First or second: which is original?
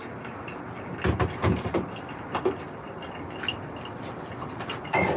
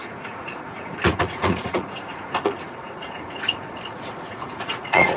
first